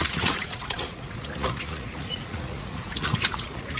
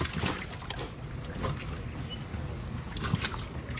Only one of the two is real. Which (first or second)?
second